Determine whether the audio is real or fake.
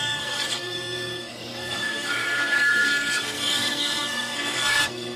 fake